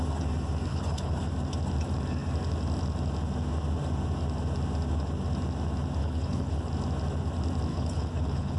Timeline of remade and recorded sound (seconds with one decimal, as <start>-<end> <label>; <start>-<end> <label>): 0.0-0.7 recorded; 0.7-1.3 remade; 1.3-6.0 recorded; 6.0-6.7 remade; 6.7-7.7 recorded; 7.7-8.6 remade